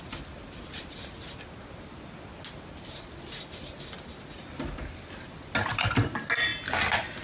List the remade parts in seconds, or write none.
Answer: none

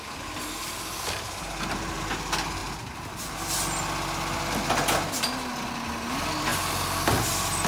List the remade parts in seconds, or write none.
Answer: none

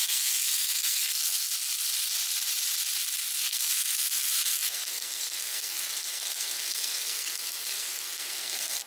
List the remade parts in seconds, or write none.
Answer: 0.0-1.4 (codec, SNAC); 3.4-8.9

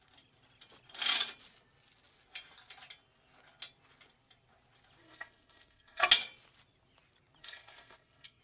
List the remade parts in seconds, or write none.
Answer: 5.0-6.1 (codec, SNAC); 7.4-8.4

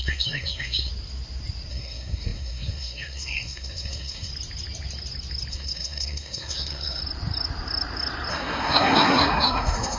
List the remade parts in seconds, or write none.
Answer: 0.0-0.9 (codec, SNAC); 1.7-4.3; 5.5-7.0; 8.3-10.0

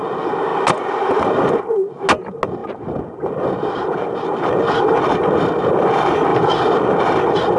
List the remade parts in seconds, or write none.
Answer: none